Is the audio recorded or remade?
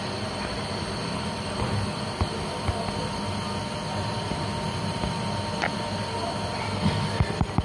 recorded